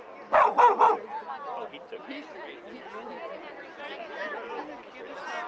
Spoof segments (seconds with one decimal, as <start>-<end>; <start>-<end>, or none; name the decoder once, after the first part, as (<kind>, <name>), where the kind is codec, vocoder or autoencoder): none